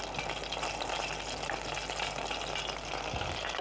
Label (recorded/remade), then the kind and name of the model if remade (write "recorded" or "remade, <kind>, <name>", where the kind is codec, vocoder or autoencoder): recorded